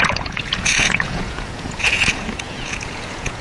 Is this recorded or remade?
remade